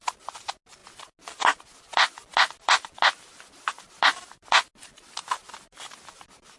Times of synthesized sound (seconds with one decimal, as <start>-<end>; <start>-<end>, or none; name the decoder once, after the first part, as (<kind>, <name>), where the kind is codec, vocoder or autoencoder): none